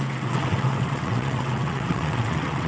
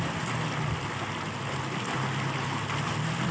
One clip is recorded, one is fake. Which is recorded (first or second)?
second